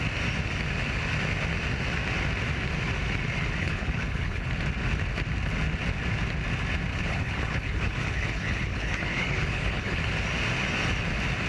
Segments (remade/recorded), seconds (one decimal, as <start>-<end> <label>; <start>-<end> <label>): 0.0-3.6 recorded; 3.6-4.5 remade; 4.5-6.9 recorded; 6.9-10.1 remade; 10.1-11.5 recorded